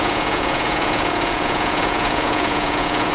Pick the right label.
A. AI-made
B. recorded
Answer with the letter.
A